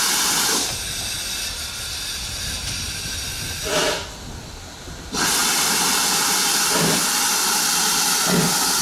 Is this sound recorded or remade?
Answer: recorded